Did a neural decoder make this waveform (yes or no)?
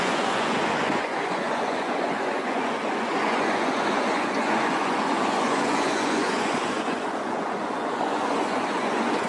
yes